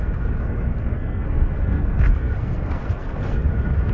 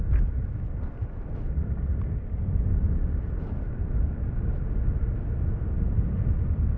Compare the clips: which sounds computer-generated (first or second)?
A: first